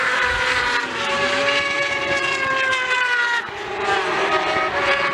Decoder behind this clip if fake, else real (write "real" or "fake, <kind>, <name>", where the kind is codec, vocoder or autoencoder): fake, vocoder, BigVGAN v2